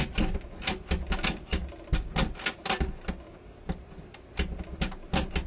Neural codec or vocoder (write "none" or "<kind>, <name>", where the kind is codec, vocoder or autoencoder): none